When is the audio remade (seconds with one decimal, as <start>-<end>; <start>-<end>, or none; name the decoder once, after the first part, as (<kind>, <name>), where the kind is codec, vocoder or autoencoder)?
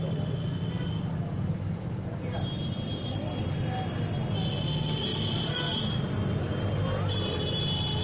5.1-7.6 (vocoder, BigVGAN v2)